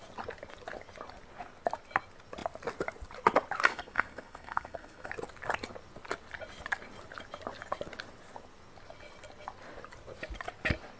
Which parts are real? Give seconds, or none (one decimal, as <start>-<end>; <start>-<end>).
0.0-3.7; 5.1-11.0